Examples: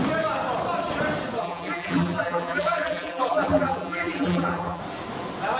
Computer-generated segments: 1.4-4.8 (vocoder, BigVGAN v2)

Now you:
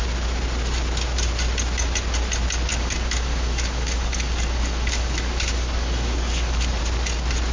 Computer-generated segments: 2.7-6.8 (codec, DAC)